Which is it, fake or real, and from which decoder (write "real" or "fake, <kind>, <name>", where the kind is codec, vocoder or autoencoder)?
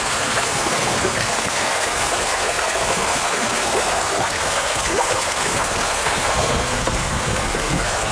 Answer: fake, codec, SNAC